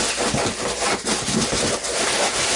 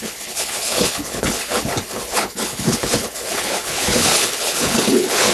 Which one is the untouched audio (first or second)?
first